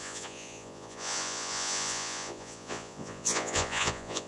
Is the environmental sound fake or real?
fake